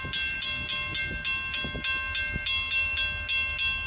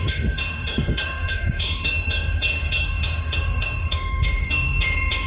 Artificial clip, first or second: second